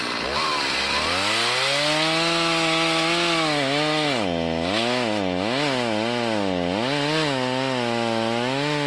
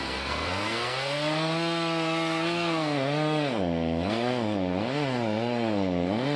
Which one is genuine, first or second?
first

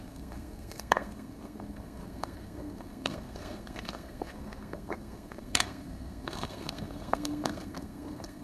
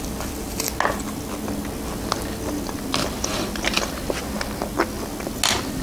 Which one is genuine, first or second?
second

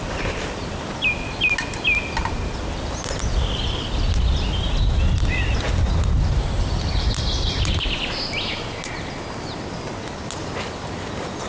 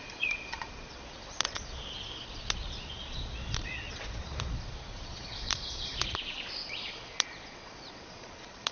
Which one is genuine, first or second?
first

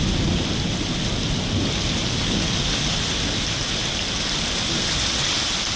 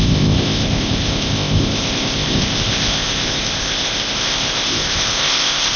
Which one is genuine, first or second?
first